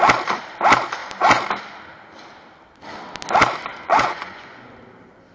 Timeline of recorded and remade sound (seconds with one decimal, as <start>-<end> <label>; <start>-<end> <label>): 0.0-3.7 recorded; 3.7-4.8 remade; 4.8-5.3 recorded